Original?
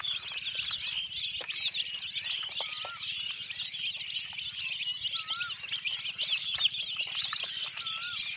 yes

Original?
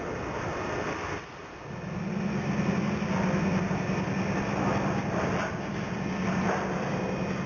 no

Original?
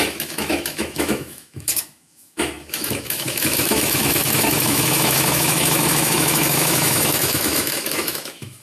no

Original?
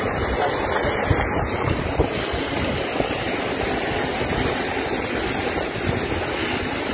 yes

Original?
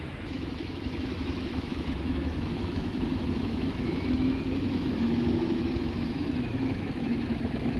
no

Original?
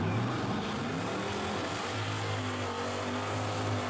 yes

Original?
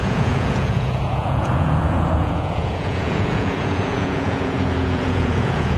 no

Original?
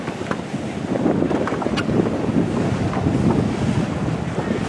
yes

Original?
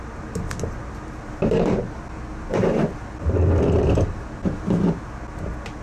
yes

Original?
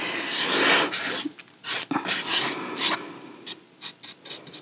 yes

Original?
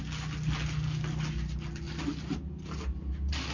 yes